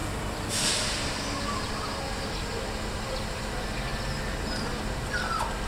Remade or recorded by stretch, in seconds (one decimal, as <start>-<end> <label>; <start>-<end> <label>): 0.0-5.7 recorded